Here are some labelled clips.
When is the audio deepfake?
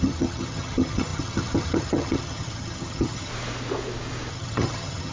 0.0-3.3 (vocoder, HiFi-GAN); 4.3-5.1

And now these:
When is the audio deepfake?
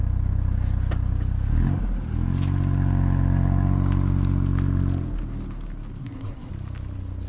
6.0-6.5 (codec, SNAC)